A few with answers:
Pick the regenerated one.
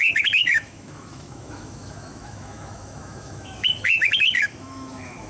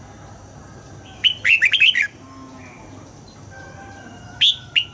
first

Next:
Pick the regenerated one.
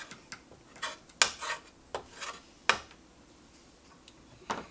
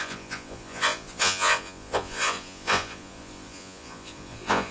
second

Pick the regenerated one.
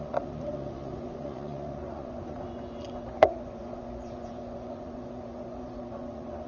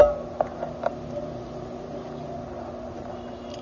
first